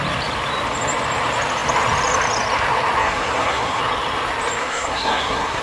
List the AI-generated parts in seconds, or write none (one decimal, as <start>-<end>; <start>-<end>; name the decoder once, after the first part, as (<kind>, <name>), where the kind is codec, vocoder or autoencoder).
3.0-3.8 (codec, SNAC); 4.6-5.6